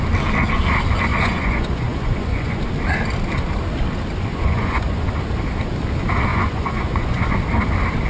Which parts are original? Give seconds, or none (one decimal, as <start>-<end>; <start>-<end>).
0.0-1.1; 2.6-4.3; 5.1-6.3; 7.4-8.1